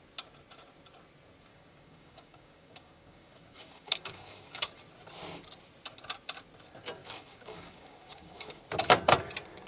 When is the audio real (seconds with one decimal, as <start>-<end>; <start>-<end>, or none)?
0.0-1.5; 4.7-7.0; 8.6-9.7